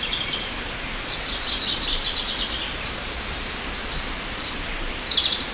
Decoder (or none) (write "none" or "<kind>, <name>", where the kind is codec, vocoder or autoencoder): none